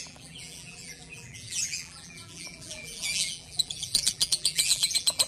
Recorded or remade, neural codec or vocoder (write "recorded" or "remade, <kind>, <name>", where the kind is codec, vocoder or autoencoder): remade, vocoder, BigVGAN v2